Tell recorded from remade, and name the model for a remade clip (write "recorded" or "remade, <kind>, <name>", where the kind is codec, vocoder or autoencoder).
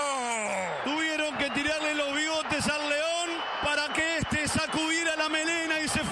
recorded